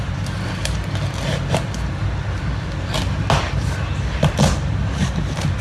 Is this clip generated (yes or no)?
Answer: no